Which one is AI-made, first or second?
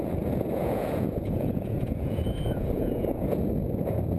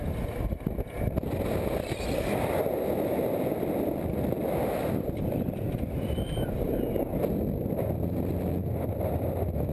first